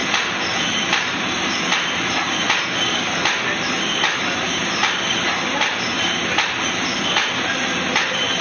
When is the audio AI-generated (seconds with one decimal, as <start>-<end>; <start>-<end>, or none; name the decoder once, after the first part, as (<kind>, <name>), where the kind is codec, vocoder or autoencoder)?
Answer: none